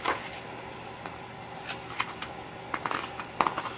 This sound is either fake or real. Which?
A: real